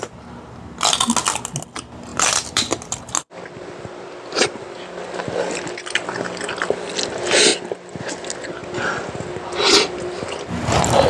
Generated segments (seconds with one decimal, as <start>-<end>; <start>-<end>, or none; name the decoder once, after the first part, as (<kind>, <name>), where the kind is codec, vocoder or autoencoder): 2.1-3.0 (vocoder, BigVGAN v2)